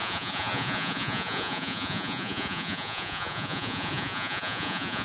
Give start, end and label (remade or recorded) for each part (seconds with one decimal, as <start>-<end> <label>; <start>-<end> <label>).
0.0-5.0 remade